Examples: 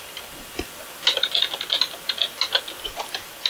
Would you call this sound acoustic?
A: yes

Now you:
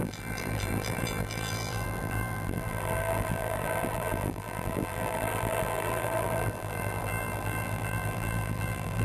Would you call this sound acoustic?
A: no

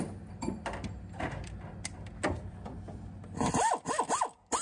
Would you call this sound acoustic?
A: yes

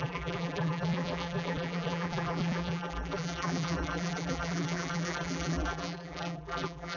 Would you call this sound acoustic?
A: no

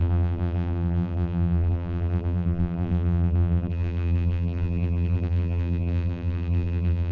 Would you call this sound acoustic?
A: no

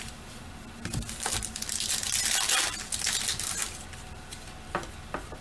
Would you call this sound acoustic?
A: yes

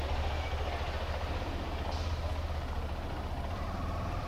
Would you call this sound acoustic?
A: yes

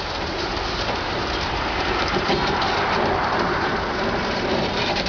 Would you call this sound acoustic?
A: no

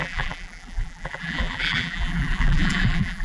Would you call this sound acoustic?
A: no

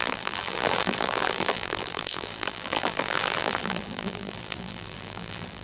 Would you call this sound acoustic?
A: no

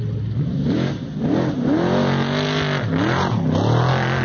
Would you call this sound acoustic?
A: yes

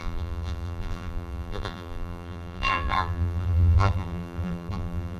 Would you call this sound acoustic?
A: no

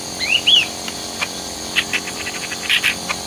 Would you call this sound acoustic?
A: no